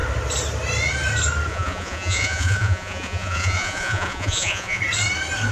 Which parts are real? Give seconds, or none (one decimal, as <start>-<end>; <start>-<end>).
0.0-1.5; 4.8-5.5